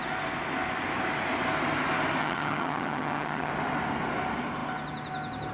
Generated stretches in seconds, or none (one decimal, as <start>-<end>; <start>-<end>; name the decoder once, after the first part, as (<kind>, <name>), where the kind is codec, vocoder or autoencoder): 2.2-3.5 (vocoder, HiFi-GAN)

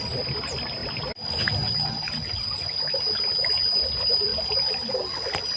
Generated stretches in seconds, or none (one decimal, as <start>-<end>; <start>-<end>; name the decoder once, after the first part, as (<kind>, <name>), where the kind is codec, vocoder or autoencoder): none

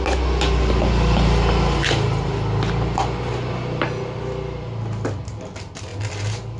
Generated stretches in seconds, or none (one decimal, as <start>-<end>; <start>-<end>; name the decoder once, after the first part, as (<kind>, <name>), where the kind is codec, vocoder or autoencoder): none